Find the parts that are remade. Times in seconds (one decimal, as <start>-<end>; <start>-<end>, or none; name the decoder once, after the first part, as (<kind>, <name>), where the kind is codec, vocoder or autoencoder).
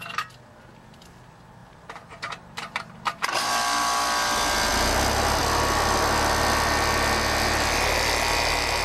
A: 1.6-3.5 (vocoder, BigVGAN v2)